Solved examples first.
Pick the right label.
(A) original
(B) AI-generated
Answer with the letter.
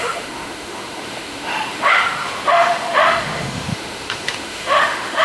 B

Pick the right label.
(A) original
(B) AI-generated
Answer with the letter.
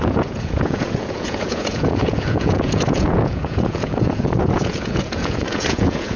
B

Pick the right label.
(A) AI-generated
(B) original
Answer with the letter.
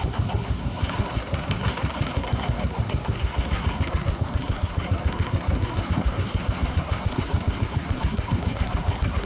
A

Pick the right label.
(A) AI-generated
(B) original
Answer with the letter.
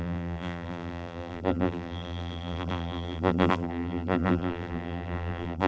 A